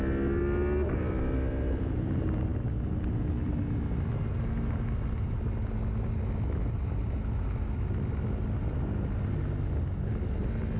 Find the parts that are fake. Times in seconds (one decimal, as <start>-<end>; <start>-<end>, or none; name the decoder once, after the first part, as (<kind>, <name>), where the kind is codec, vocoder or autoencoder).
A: none